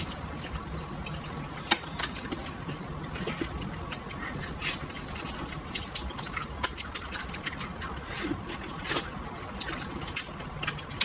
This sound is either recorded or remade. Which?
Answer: recorded